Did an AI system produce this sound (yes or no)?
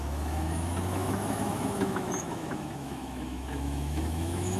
yes